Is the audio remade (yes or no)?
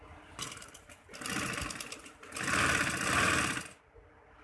no